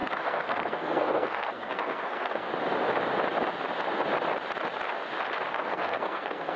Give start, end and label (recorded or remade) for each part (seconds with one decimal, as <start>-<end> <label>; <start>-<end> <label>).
0.0-2.5 remade; 2.5-5.5 recorded; 5.5-6.6 remade